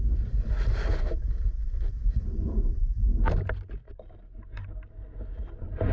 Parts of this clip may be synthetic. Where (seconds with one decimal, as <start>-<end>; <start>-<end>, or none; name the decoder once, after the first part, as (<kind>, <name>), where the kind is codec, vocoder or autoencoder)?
0.0-3.0 (vocoder, BigVGAN v2); 3.8-4.6; 5.3-5.9